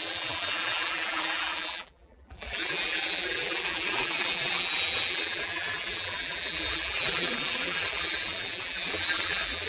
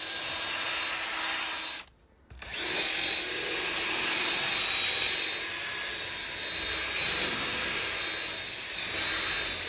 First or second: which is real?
second